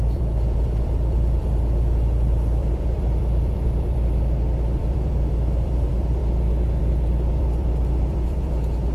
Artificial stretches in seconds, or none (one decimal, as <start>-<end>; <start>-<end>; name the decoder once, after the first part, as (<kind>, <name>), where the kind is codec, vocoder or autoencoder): 0.0-6.2 (vocoder, BigVGAN v2); 6.8-8.9